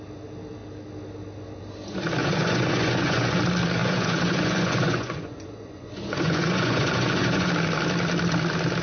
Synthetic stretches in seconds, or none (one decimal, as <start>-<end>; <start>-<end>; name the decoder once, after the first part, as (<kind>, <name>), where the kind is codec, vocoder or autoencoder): 2.2-3.4 (vocoder, Vocos); 3.8-7.5